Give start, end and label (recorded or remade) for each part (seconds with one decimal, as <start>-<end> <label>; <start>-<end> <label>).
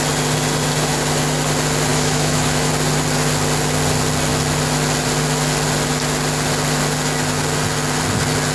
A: 0.0-1.9 recorded; 1.9-2.7 remade; 2.7-8.5 recorded